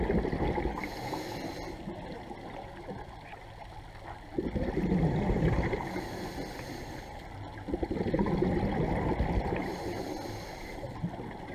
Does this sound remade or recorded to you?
recorded